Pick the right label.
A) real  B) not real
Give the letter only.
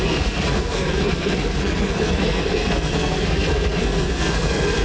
B